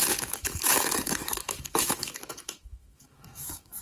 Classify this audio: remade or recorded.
remade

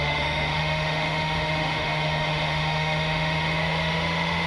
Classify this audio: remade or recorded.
remade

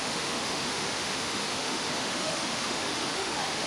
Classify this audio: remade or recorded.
remade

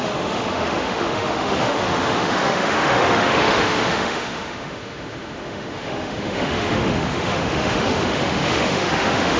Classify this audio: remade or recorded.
remade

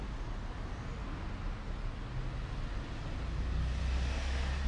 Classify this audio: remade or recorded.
recorded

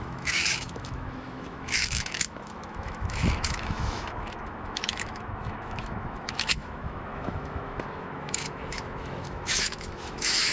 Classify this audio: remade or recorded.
remade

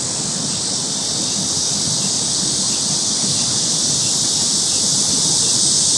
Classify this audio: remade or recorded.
recorded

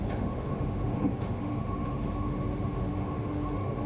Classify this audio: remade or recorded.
remade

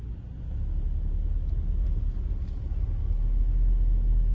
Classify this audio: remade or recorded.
recorded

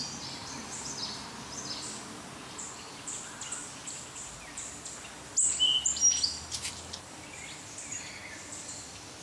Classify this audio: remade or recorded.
recorded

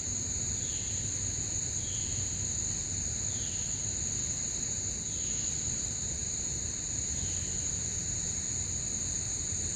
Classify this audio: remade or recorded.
recorded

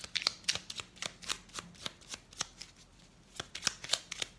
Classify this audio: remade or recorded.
recorded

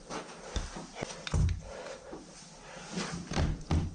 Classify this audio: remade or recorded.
recorded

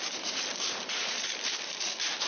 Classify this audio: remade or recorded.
recorded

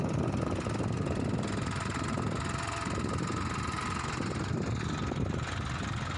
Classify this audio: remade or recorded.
recorded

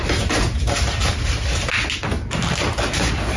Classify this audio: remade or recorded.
recorded